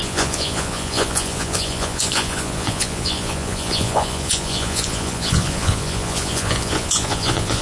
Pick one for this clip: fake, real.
fake